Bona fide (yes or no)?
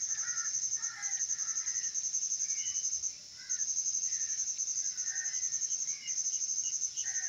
yes